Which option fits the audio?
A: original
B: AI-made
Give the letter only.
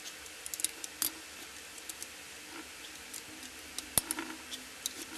A